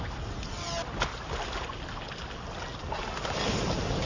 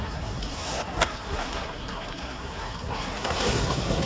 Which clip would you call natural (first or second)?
first